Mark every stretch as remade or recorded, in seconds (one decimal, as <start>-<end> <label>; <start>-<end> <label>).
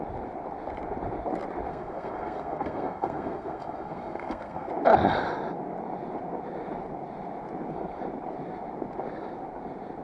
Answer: 0.0-1.7 recorded; 1.7-4.7 remade; 4.7-10.0 recorded